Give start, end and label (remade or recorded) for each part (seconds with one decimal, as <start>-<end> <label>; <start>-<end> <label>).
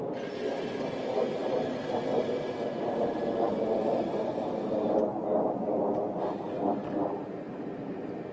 0.0-8.3 recorded